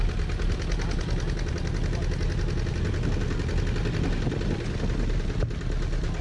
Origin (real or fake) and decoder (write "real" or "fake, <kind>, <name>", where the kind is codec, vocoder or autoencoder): real